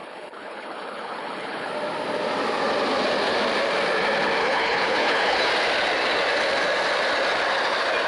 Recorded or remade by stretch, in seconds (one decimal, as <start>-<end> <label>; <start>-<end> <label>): 0.0-1.7 remade; 1.7-4.4 recorded; 4.4-5.5 remade; 5.5-8.1 recorded